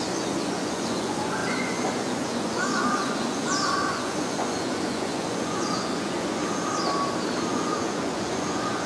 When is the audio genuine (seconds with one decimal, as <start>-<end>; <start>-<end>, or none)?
6.4-7.5